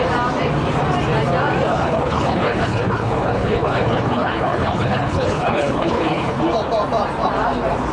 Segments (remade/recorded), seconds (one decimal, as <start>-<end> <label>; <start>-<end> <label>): 0.0-1.7 recorded; 1.7-6.4 remade; 6.4-7.9 recorded